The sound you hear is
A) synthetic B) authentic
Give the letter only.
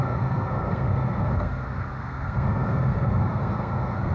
A